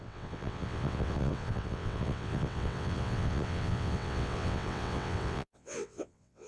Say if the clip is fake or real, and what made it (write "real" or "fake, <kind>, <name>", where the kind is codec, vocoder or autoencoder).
fake, vocoder, WaveNeXt